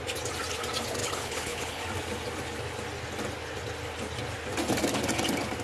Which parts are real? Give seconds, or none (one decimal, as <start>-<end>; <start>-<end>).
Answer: 0.0-1.0; 1.8-5.6